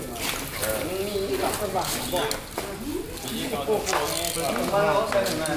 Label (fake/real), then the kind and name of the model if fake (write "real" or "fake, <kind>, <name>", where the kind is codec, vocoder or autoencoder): real